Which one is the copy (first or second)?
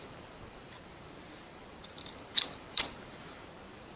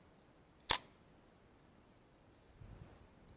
first